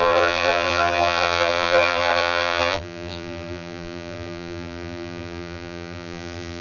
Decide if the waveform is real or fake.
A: fake